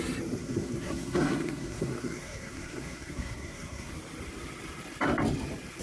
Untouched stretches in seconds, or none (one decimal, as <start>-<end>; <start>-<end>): 0.0-0.4; 3.9-5.8